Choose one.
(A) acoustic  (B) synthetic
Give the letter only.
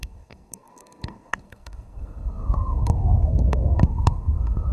B